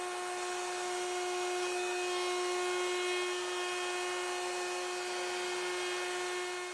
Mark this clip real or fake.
real